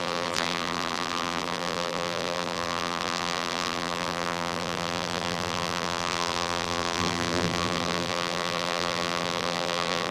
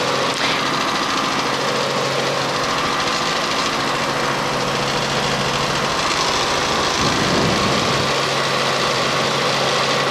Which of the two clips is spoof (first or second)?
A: first